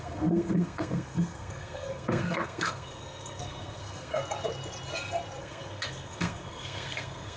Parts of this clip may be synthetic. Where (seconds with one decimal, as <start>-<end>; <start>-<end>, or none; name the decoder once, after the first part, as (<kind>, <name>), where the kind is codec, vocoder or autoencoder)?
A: 0.0-4.2 (codec, SNAC); 5.4-7.4